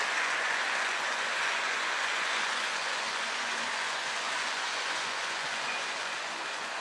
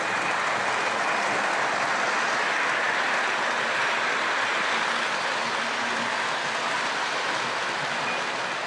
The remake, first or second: first